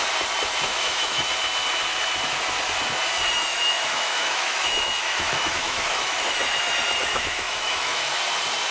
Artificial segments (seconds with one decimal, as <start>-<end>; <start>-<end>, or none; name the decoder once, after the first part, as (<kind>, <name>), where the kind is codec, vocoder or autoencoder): 0.7-1.3 (autoencoder, DAC-VAE); 3.5-6.2; 7.0-8.2